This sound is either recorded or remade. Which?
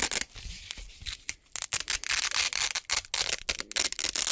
recorded